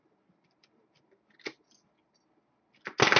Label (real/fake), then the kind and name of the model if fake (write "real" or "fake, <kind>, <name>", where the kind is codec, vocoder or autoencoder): real